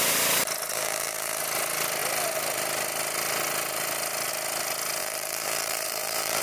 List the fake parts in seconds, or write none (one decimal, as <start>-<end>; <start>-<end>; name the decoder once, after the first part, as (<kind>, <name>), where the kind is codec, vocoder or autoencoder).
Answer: 0.7-1.4 (vocoder, BigVGAN v2); 5.0-6.4